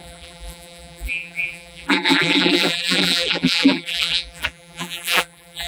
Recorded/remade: remade